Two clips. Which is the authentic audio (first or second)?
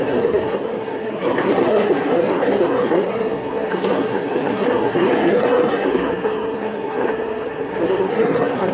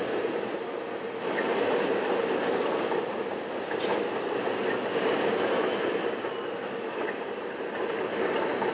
second